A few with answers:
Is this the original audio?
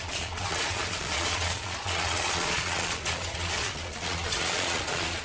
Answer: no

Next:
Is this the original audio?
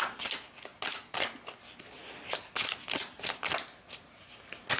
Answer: yes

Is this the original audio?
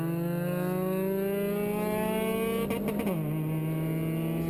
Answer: yes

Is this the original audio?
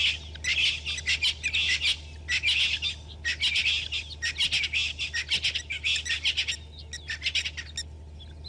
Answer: yes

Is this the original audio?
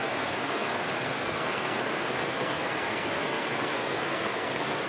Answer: no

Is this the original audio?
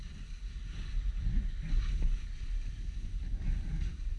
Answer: yes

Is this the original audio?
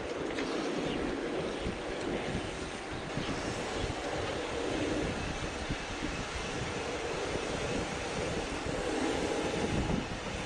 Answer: yes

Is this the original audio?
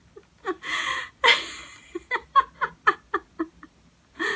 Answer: yes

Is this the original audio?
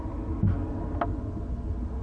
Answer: yes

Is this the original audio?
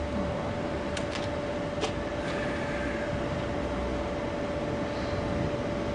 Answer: yes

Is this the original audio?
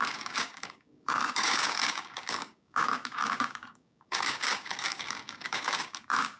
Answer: no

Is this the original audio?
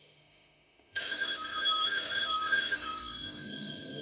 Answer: no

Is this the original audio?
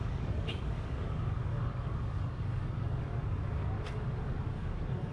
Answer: no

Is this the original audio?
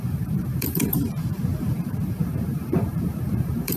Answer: no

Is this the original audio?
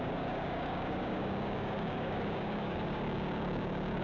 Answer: no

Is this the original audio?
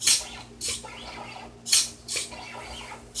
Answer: yes